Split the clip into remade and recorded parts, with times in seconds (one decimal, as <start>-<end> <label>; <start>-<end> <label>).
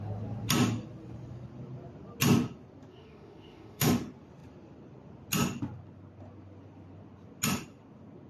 0.0-2.9 recorded; 2.9-3.9 remade; 3.9-8.3 recorded